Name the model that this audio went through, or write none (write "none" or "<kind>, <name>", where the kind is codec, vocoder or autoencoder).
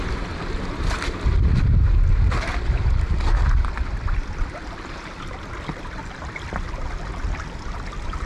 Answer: none